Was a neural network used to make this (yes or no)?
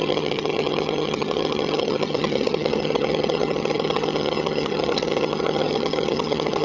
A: yes